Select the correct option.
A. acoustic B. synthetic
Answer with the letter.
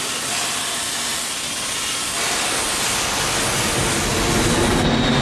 A